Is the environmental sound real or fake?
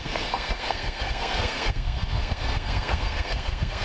fake